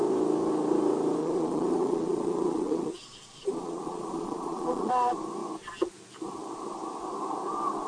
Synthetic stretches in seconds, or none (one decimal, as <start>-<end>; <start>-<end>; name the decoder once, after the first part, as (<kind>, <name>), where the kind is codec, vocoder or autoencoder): 1.2-4.9 (vocoder, Vocos)